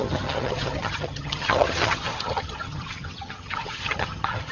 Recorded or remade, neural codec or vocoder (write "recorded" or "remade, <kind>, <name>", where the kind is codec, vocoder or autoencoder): remade, vocoder, HiFi-GAN